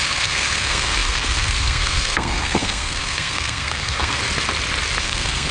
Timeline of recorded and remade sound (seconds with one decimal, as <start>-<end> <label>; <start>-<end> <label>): 0.0-4.2 remade; 4.2-5.0 recorded; 5.0-5.5 remade